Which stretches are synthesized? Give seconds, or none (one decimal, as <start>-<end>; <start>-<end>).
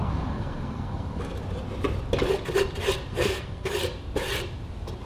0.0-1.4; 3.1-3.7